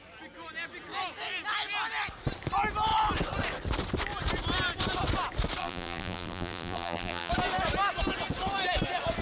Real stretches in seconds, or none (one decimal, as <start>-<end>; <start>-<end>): 0.0-5.6; 7.3-9.2